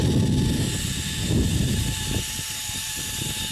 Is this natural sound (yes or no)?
yes